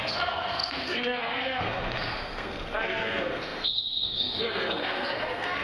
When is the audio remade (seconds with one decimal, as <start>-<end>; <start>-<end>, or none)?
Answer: 0.0-5.6